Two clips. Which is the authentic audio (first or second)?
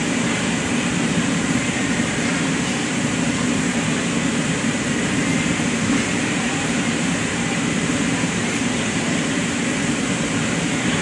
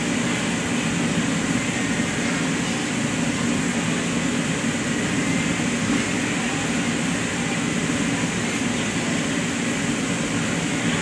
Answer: second